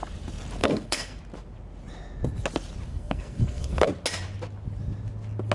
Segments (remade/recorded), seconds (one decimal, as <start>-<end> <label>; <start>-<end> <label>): 0.0-0.6 recorded; 0.6-1.2 remade; 1.2-2.9 recorded; 2.9-3.9 remade; 3.9-5.5 recorded